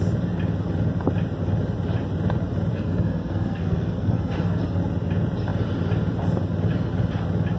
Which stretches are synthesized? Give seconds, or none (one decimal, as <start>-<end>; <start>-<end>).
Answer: 2.7-4.6